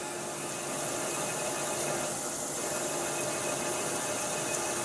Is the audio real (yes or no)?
yes